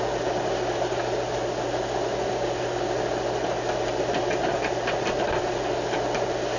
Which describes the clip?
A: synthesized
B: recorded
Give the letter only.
B